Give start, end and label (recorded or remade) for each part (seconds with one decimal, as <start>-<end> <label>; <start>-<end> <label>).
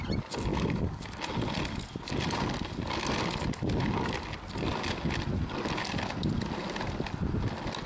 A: 0.0-0.5 recorded; 0.5-1.2 remade; 1.2-7.9 recorded